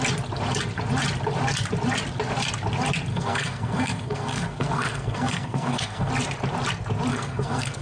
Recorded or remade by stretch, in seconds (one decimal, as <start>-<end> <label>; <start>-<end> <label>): 0.0-3.1 recorded; 3.1-6.1 remade; 6.1-7.1 recorded; 7.1-7.8 remade